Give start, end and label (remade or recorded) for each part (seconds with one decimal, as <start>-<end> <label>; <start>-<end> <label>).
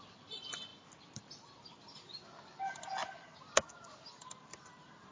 0.0-5.1 recorded